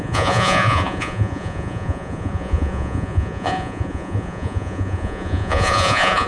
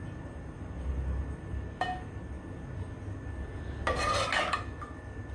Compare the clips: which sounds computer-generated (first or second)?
first